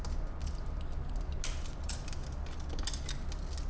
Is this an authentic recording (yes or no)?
yes